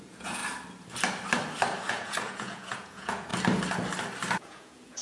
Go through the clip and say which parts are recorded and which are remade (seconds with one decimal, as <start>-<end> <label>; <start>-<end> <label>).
0.0-0.4 remade; 0.4-1.9 recorded; 1.9-3.3 remade; 3.3-4.4 recorded; 4.4-5.0 remade